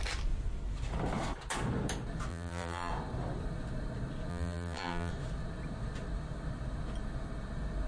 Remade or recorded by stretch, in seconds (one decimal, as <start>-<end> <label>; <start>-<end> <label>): 0.0-2.3 recorded; 2.3-2.9 remade; 2.9-4.3 recorded; 4.3-5.1 remade; 5.1-7.9 recorded